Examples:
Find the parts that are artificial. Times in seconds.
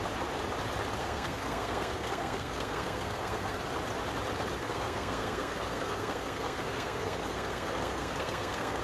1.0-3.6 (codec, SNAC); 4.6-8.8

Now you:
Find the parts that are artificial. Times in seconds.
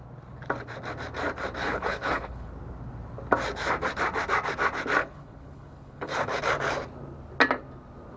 1.6-2.5 (codec, HILCodec); 5.0-6.4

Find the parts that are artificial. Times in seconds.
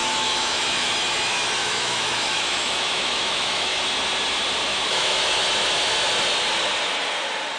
0.0-0.9 (autoencoder, DAC-VAE); 1.6-3.8; 4.7-5.4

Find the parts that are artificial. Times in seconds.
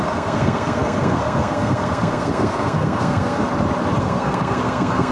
0.0-3.4 (codec, SNAC); 4.0-5.1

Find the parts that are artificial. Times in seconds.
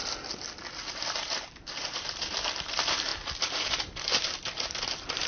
0.7-5.3 (vocoder, BigVGAN v2)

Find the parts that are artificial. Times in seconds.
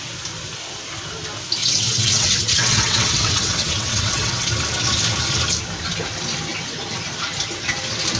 1.6-4.5 (vocoder, WaveNeXt)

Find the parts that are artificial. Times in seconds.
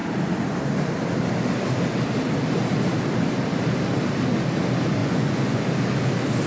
5.0-5.6 (vocoder, Vocos)